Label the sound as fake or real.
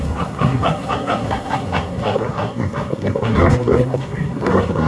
fake